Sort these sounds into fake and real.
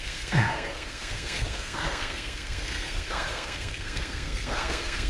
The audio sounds fake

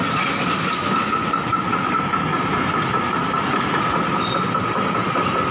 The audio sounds real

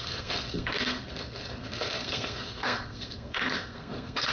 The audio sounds fake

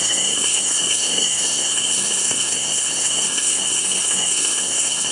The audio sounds fake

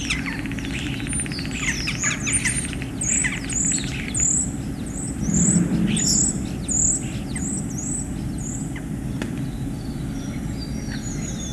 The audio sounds real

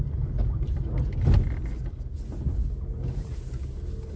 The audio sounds real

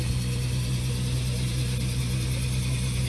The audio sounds real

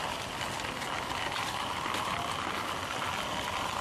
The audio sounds real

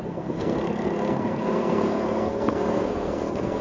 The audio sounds fake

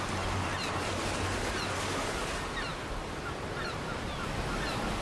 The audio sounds real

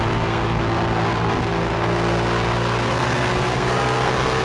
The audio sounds fake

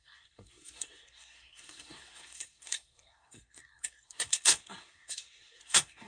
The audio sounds fake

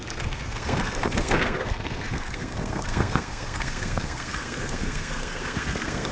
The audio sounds fake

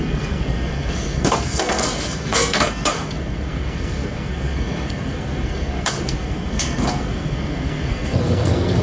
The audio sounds fake